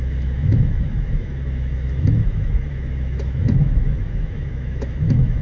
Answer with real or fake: fake